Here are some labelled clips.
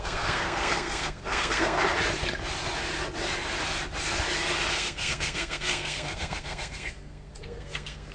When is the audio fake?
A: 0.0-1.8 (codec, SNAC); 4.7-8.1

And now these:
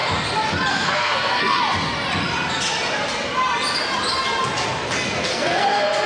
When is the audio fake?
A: 0.7-1.6 (codec, SNAC); 5.3-6.1

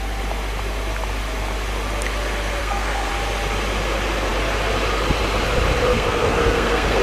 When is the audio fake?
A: 2.6-3.1 (codec, SNAC); 5.9-7.0

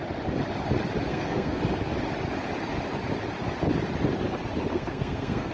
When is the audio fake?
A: 1.1-1.6 (codec, SNAC); 4.7-5.5

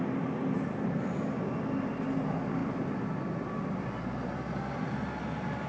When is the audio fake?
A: none

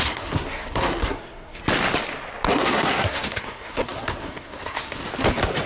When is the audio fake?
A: 0.0-1.6 (codec, SNAC); 2.5-5.0

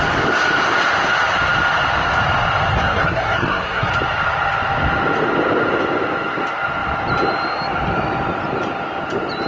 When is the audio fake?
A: 2.7-3.9 (codec, SNAC)

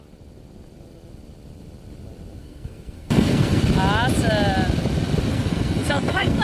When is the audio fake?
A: 2.4-3.6 (codec, SNAC); 5.3-6.4